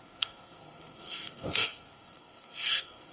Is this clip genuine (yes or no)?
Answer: no